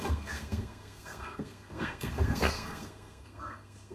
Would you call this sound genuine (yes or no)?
no